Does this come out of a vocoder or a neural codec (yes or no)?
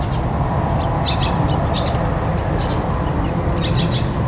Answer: no